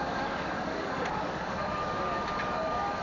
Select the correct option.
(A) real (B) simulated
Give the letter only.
B